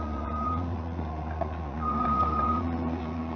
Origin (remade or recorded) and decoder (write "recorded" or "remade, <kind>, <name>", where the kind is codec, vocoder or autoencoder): remade, vocoder, Vocos